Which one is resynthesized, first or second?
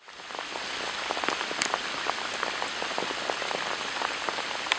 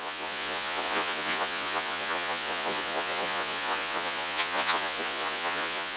second